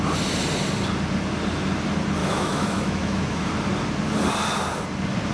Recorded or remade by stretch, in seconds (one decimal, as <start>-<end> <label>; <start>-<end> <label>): 0.0-2.2 recorded; 2.2-3.5 remade; 3.5-5.3 recorded